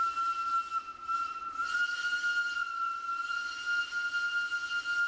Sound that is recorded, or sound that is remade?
recorded